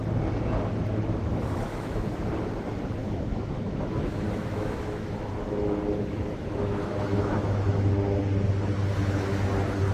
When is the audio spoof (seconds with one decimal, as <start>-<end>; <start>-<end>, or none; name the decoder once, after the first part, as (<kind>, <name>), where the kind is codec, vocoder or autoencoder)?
1.0-2.2 (autoencoder, DAC-VAE); 3.0-7.9